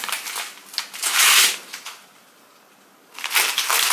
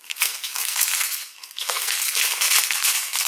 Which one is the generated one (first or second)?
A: second